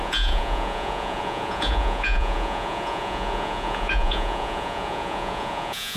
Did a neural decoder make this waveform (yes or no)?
yes